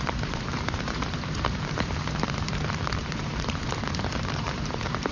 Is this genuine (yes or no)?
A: no